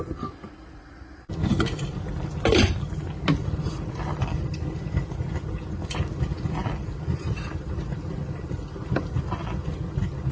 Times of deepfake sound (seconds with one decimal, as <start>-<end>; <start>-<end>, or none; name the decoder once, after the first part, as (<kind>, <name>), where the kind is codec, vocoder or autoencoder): none

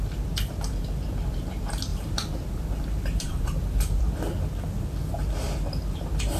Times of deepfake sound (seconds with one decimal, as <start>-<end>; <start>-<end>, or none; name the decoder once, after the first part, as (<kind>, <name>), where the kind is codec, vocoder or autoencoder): 1.9-4.0 (vocoder, BigVGAN v2)

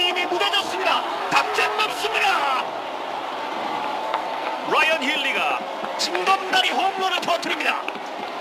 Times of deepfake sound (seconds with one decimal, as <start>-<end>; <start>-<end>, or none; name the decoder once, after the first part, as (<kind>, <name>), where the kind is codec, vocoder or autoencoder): 0.0-2.4 (codec, SNAC); 4.0-4.6; 6.0-7.8

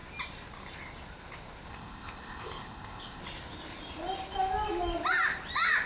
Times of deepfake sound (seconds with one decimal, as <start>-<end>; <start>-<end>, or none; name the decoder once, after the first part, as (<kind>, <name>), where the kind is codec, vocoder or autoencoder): 1.7-3.2 (codec, ZipCodec)

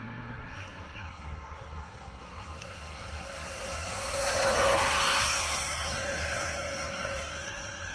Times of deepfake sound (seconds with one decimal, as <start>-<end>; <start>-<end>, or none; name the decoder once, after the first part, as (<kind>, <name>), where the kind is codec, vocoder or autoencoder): 0.0-7.9 (codec, SNAC)

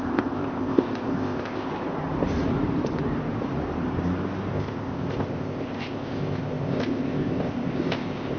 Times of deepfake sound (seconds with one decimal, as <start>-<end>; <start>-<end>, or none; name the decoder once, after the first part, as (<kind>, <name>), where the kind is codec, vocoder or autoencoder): 0.0-1.7 (codec, ZipCodec); 4.5-8.4

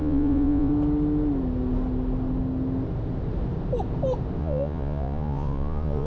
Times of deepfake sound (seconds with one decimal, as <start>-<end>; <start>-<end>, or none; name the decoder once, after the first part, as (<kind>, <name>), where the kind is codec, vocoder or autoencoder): 0.0-0.7 (vocoder, Vocos); 4.4-6.1

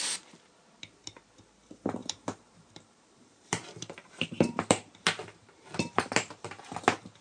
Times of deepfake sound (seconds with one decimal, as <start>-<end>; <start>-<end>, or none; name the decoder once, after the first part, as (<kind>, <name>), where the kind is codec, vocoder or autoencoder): 2.0-4.8 (vocoder, BigVGAN v2); 5.2-6.8